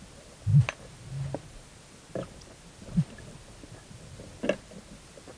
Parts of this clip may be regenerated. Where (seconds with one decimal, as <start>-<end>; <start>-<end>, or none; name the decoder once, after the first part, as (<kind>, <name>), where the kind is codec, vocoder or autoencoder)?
none